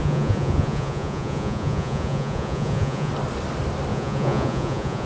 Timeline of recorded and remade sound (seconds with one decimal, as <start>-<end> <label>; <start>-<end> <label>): 0.0-3.1 remade; 3.1-3.9 recorded; 3.9-5.1 remade